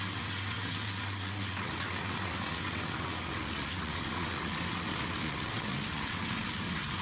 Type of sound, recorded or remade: remade